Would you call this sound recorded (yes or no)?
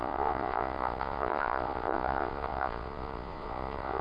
no